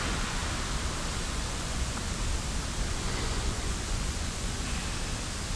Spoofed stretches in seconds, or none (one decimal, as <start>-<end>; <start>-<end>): 0.0-0.4; 1.3-2.0; 2.9-4.8